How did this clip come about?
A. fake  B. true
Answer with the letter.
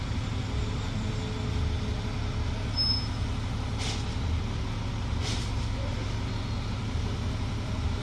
B